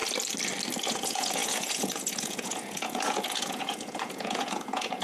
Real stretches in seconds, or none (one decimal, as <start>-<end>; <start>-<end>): 0.0-0.8